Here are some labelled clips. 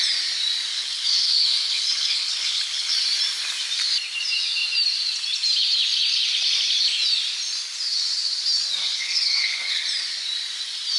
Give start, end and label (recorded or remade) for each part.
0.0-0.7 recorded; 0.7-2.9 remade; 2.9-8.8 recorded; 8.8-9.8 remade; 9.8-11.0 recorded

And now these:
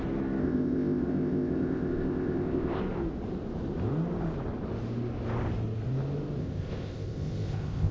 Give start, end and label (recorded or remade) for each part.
0.0-0.4 recorded; 0.4-2.8 remade; 2.8-6.4 recorded; 6.4-7.9 remade

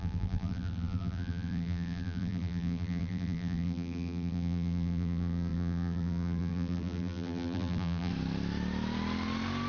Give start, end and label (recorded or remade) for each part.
0.0-8.1 remade; 8.1-9.7 recorded

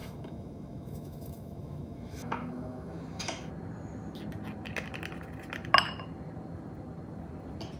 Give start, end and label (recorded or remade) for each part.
0.0-3.5 remade; 3.5-7.8 recorded

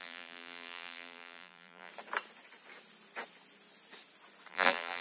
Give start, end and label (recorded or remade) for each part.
0.0-1.9 remade; 1.9-4.5 recorded; 4.5-5.0 remade